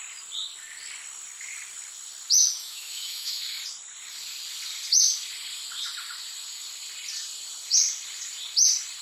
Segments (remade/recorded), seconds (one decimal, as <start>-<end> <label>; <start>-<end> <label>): 0.0-2.6 recorded; 2.6-3.6 remade; 3.6-9.0 recorded

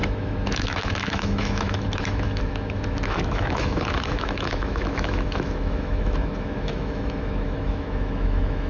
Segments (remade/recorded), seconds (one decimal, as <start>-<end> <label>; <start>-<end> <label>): 0.0-8.7 remade

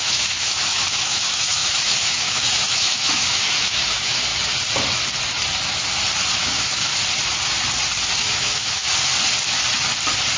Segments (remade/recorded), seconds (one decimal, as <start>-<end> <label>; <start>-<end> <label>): 0.0-4.3 remade; 4.3-6.3 recorded; 6.3-6.9 remade; 6.9-8.2 recorded; 8.2-8.8 remade; 8.8-10.4 recorded

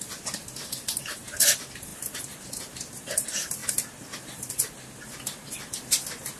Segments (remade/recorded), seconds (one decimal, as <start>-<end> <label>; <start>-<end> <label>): 0.0-6.4 recorded

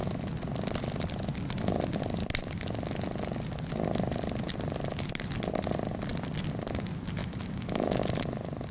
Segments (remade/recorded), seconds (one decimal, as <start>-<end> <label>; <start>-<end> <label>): 0.0-7.2 recorded; 7.2-8.0 remade; 8.0-8.7 recorded

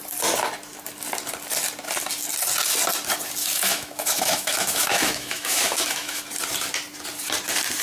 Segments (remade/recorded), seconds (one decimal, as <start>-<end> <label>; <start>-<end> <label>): 0.0-3.4 recorded; 3.4-6.2 remade; 6.2-7.8 recorded

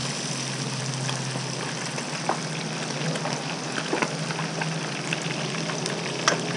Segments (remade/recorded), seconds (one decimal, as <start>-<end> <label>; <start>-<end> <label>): 0.0-6.6 recorded